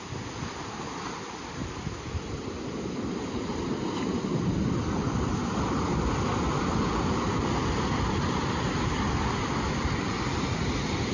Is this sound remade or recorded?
recorded